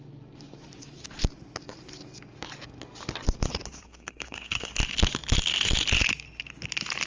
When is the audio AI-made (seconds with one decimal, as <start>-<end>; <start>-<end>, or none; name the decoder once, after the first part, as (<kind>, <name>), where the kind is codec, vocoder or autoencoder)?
3.8-4.7 (codec, SNAC)

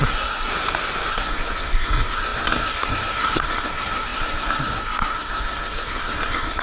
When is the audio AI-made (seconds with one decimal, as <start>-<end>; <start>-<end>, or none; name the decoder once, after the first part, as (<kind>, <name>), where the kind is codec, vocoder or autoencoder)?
0.0-0.5 (codec, SNAC); 1.1-6.6

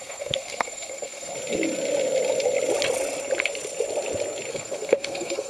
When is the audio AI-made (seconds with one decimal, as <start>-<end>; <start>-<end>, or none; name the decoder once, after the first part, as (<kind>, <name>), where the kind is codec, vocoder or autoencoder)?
0.0-1.3 (codec, SNAC); 4.5-5.5